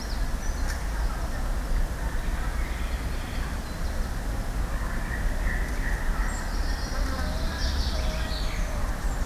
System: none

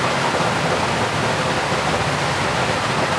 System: none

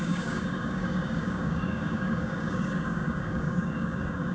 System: codec, DAC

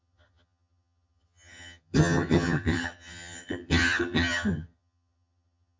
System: vocoder, HiFi-GAN